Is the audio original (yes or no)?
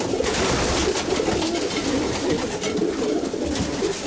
yes